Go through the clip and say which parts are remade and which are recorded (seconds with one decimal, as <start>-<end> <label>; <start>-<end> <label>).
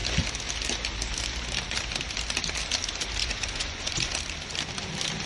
0.0-3.2 recorded; 3.2-4.1 remade; 4.1-5.3 recorded